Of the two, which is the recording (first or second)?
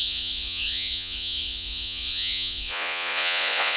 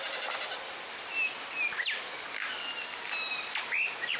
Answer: second